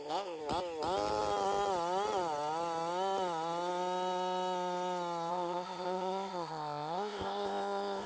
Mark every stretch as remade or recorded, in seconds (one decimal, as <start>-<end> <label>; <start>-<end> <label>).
0.0-0.4 remade; 0.4-5.3 recorded; 5.3-8.1 remade